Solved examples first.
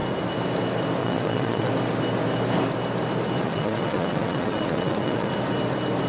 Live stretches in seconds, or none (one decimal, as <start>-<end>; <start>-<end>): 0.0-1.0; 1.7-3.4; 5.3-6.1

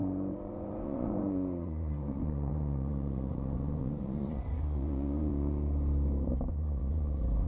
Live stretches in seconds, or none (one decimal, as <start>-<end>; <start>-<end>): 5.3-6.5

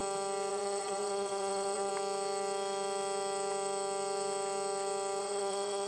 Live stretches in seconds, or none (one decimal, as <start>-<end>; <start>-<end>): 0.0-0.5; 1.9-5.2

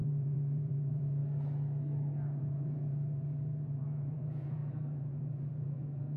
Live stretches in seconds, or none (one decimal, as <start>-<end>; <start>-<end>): 1.2-2.4

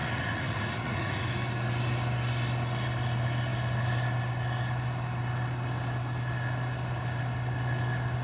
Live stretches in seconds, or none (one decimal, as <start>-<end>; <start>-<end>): 1.2-8.2

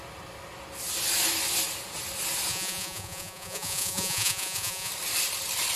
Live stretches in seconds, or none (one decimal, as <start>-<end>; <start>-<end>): 0.0-2.5; 4.9-5.8